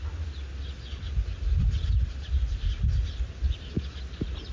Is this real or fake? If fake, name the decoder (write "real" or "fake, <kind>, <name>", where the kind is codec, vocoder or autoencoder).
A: real